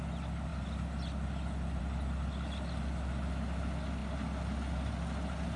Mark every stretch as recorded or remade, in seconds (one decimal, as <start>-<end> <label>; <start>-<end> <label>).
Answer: 0.0-5.6 recorded